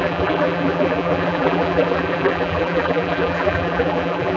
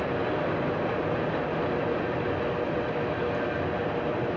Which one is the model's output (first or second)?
first